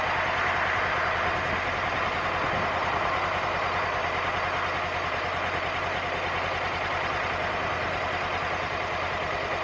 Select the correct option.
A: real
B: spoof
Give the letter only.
A